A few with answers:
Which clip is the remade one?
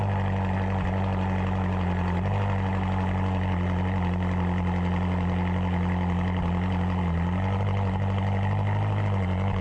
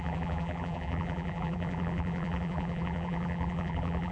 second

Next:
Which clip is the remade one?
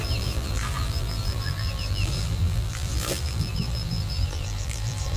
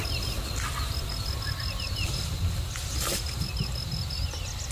first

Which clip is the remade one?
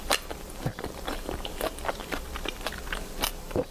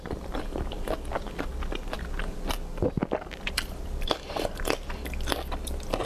first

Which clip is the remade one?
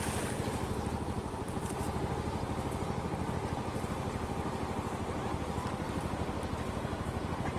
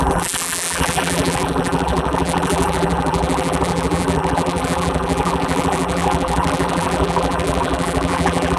second